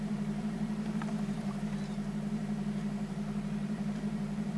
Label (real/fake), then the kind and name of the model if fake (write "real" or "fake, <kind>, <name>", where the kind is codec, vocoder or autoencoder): fake, vocoder, BigVGAN v2